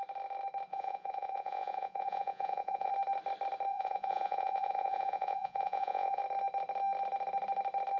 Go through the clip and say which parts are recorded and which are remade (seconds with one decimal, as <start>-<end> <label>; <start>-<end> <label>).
0.0-0.7 recorded; 0.7-2.9 remade; 2.9-3.7 recorded; 3.7-6.2 remade; 6.2-8.0 recorded